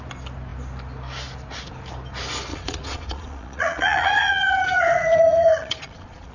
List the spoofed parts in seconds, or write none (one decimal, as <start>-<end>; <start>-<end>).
2.5-6.3